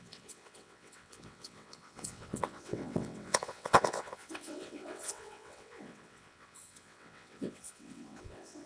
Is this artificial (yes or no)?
yes